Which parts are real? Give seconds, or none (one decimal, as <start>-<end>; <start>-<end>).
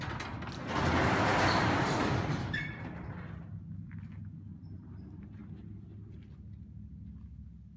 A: 0.0-1.3; 3.2-4.5; 5.5-7.8